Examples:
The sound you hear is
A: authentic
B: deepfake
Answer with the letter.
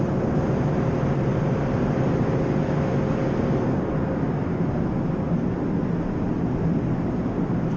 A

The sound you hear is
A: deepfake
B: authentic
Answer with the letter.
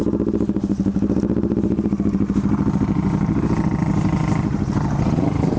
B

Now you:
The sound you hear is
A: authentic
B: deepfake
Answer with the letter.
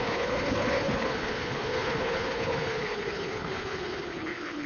B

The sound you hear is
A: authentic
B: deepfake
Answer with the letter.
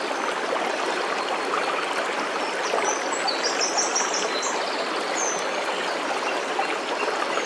A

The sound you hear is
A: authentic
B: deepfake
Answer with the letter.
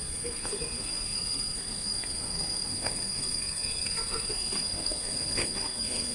B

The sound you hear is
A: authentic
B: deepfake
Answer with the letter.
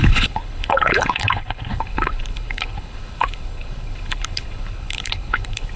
B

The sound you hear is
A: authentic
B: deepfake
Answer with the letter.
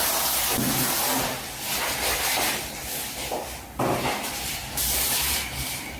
A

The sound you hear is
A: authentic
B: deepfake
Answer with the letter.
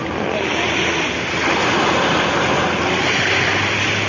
A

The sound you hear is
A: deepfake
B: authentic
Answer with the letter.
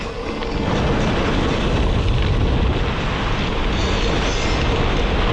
B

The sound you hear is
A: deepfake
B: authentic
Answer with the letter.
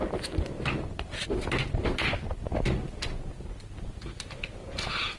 B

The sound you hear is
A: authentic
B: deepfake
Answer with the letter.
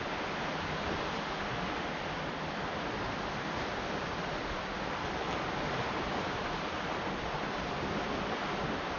A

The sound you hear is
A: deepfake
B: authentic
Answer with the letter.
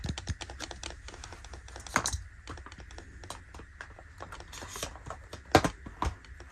B